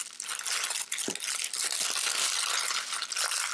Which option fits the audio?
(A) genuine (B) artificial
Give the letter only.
A